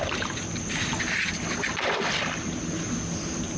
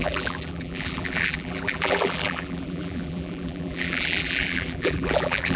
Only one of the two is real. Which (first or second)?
first